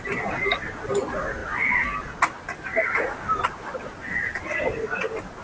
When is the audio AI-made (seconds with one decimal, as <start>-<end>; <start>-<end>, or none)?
none